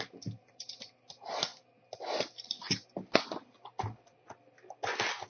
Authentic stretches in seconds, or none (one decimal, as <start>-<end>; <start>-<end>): 0.0-5.3